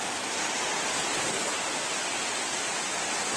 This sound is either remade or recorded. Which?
recorded